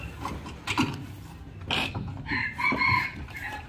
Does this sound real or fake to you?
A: real